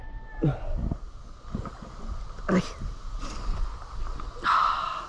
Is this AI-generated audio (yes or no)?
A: no